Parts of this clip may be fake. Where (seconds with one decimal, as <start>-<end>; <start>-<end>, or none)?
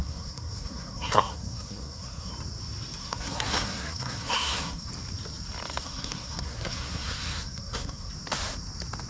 0.0-2.3; 3.0-4.9; 5.8-8.1